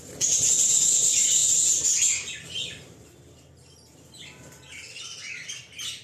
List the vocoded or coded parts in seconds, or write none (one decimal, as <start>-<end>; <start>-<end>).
none